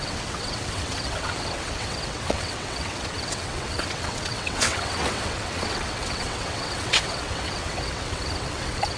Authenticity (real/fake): fake